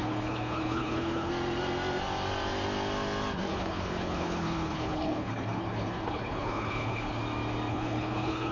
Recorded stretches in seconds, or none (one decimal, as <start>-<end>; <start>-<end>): 1.3-3.5; 7.2-7.7